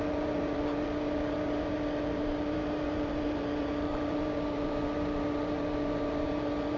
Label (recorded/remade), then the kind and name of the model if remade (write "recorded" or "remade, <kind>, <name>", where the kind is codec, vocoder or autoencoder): remade, vocoder, BigVGAN v2